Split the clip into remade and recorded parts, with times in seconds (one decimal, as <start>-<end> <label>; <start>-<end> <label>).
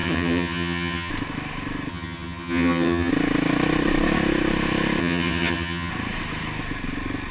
0.0-1.1 remade; 1.1-1.9 recorded; 1.9-3.1 remade; 3.1-5.0 recorded; 5.0-5.9 remade; 5.9-7.3 recorded